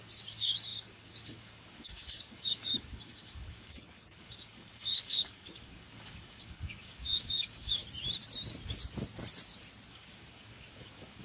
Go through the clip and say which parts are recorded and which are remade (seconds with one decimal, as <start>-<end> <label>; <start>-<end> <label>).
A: 0.0-7.8 remade; 7.8-9.9 recorded; 9.9-11.2 remade